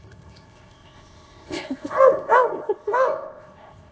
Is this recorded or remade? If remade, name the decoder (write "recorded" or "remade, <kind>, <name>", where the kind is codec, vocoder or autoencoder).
remade, codec, ZipCodec